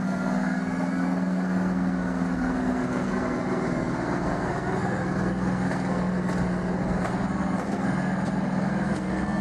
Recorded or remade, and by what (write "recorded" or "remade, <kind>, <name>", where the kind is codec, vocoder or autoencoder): remade, codec, SNAC